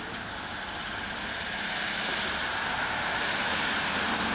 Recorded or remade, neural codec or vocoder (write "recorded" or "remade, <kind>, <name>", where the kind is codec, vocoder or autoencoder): recorded